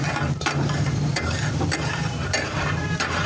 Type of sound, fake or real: fake